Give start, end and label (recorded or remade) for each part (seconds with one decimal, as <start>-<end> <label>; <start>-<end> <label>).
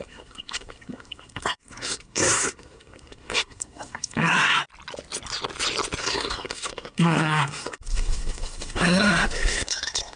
0.0-4.6 remade; 4.6-6.0 recorded; 6.0-10.2 remade